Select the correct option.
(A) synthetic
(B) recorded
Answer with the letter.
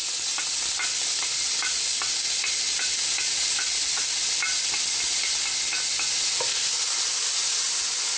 B